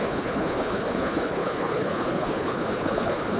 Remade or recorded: remade